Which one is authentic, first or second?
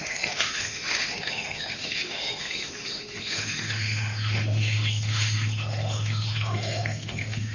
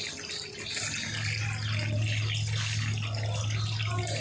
second